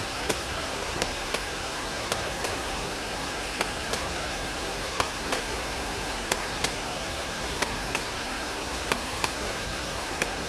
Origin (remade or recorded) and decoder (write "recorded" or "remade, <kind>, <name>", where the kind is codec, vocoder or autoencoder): remade, codec, SNAC